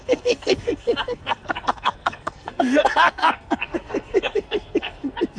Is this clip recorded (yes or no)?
no